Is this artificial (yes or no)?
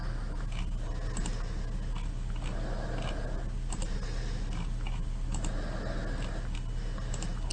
no